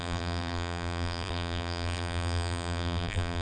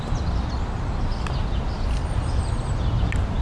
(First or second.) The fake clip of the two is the first